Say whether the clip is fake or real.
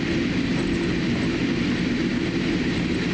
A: real